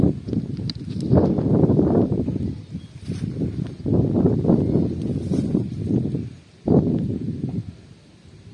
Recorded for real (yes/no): yes